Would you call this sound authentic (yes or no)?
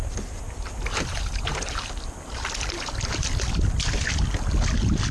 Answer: yes